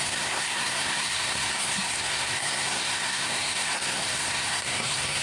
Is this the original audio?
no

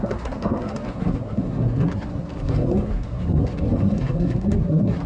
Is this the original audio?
no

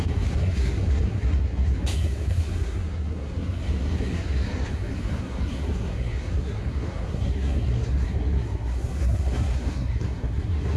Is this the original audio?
no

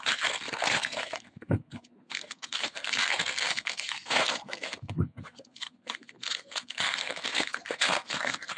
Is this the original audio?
no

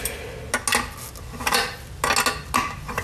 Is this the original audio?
yes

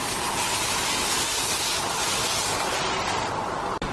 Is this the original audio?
yes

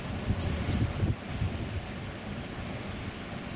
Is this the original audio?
yes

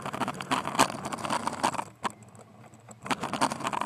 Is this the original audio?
yes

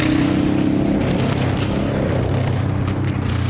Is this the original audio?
yes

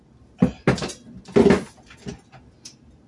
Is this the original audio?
yes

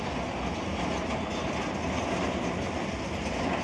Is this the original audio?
yes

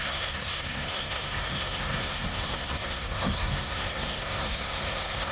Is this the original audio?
no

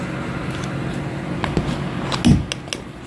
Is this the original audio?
yes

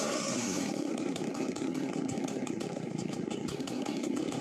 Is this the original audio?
no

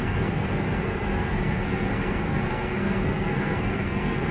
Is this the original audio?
no